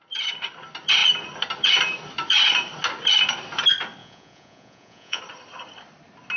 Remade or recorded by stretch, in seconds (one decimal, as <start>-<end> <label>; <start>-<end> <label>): 0.0-4.0 recorded; 4.0-5.2 remade; 5.2-6.4 recorded